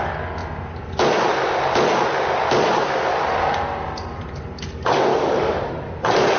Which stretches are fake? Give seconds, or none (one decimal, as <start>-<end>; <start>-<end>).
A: 5.1-5.7